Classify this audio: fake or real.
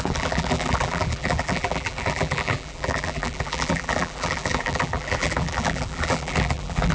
fake